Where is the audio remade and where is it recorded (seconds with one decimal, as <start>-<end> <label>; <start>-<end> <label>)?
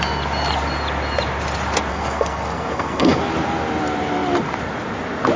0.0-1.9 recorded; 1.9-3.2 remade; 3.2-5.4 recorded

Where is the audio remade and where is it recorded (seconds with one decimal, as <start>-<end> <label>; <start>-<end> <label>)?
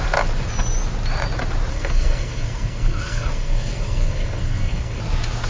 0.0-1.7 recorded; 1.7-5.0 remade; 5.0-5.5 recorded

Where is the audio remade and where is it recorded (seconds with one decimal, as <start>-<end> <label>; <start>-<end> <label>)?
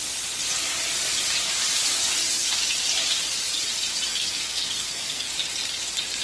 0.0-4.1 recorded; 4.1-5.3 remade; 5.3-6.2 recorded